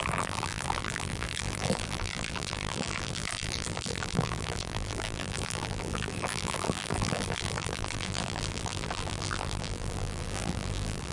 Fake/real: fake